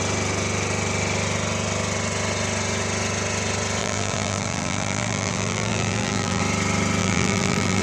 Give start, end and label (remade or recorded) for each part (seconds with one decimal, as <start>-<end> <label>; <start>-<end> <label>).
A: 0.0-3.8 recorded; 3.8-6.4 remade; 6.4-7.0 recorded; 7.0-7.8 remade